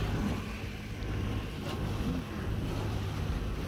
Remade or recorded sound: recorded